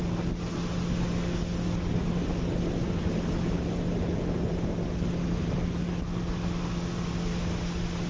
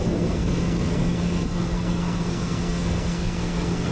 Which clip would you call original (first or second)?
first